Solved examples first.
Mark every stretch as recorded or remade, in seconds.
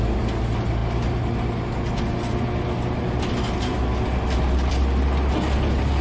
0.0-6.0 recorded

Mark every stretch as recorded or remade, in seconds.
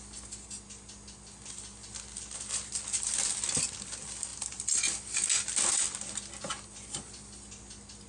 0.0-8.1 recorded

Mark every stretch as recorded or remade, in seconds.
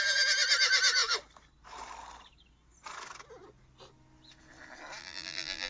0.0-5.0 recorded; 5.0-5.7 remade